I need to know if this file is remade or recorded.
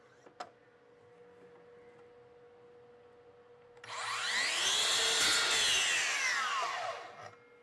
recorded